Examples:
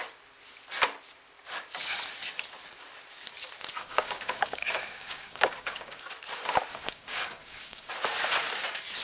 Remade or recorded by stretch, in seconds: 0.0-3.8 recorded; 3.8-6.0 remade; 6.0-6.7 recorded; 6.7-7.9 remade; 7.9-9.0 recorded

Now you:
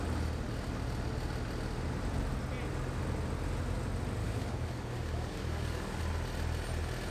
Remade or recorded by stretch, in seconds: 0.0-4.2 recorded; 4.2-6.0 remade; 6.0-7.1 recorded

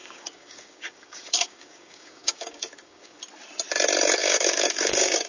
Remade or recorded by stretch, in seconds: 0.0-3.2 remade; 3.2-4.2 recorded; 4.2-5.3 remade

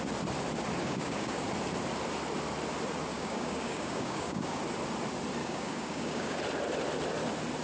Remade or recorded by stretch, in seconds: 0.0-0.8 recorded; 0.8-1.4 remade; 1.4-3.1 recorded; 3.1-4.6 remade; 4.6-5.4 recorded; 5.4-6.4 remade; 6.4-7.6 recorded